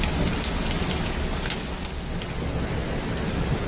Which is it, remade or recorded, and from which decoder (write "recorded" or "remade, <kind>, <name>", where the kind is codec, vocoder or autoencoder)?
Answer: recorded